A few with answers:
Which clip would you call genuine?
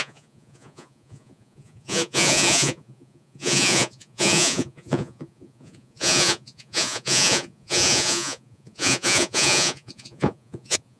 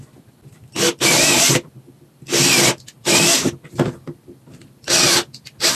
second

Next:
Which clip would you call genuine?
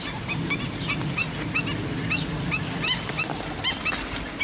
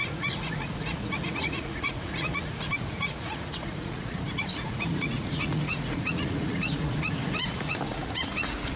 first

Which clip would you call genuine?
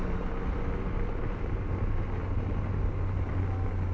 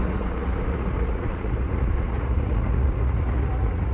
first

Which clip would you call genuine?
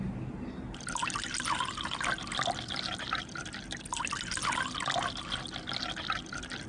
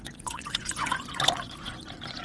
first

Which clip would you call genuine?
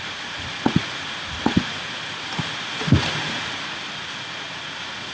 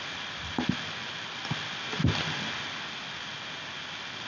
second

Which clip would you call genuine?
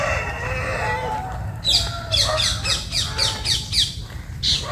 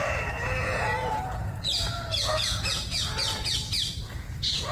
first